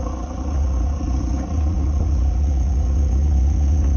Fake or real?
fake